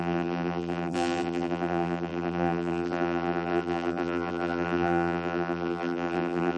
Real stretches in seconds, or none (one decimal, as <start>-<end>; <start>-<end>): none